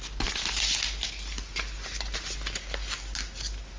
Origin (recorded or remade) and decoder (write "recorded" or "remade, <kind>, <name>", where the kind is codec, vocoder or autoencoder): recorded